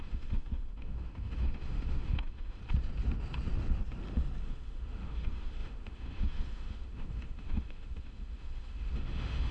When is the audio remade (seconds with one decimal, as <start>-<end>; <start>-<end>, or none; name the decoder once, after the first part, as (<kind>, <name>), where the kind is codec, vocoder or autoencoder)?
0.0-2.6 (autoencoder, DAC-VAE); 4.4-9.5